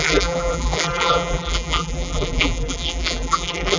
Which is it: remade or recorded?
remade